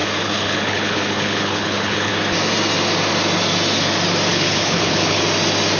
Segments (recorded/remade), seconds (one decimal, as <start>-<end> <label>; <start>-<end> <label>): 0.0-2.1 remade; 2.1-4.3 recorded; 4.3-5.2 remade; 5.2-5.8 recorded